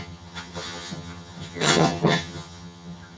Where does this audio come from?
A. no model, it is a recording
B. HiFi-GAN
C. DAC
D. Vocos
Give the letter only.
B